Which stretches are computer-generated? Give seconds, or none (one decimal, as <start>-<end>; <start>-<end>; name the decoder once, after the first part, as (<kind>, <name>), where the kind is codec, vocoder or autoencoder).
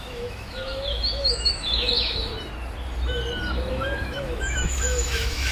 0.0-2.3 (autoencoder, DAC-VAE); 3.7-5.5